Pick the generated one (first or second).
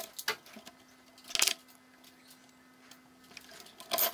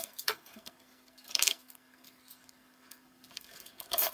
second